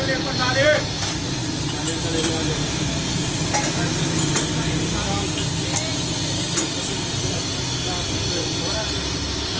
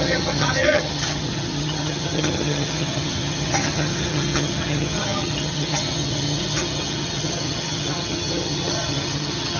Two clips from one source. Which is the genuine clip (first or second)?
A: first